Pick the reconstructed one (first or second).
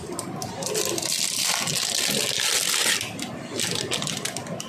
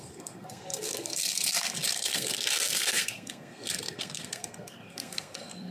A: second